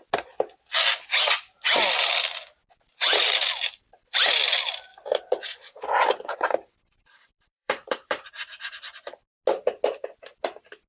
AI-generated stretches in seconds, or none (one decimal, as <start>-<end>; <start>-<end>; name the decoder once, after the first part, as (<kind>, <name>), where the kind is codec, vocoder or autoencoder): 4.9-8.3 (vocoder, BigVGAN v2)